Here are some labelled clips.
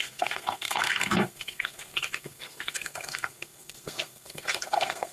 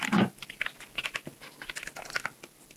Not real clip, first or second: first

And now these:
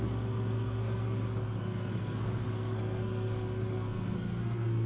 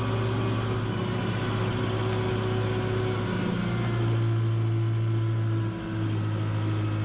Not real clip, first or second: first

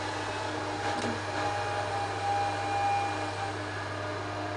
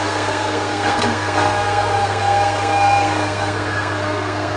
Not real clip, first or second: second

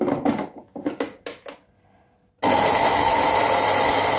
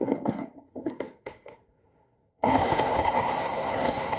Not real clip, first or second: second